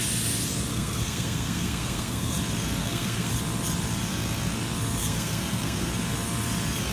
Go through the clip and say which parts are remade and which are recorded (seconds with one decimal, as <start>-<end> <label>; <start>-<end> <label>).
0.0-0.7 recorded; 0.7-2.4 remade; 2.4-2.8 recorded; 2.8-3.3 remade; 3.3-5.0 recorded; 5.0-5.9 remade; 5.9-6.9 recorded